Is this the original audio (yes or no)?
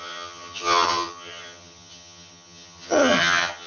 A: no